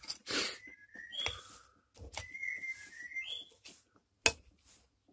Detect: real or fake real